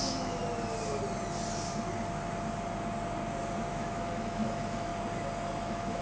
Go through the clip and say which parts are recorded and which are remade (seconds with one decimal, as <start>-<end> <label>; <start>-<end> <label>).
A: 0.0-0.4 remade; 0.4-3.7 recorded; 3.7-4.9 remade; 4.9-5.6 recorded; 5.6-6.0 remade